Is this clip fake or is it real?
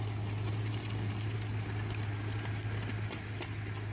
real